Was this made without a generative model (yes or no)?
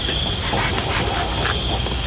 yes